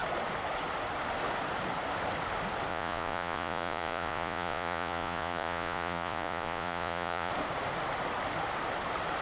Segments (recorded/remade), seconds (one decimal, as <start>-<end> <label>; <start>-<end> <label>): 0.0-2.7 recorded; 2.7-7.3 remade; 7.3-9.2 recorded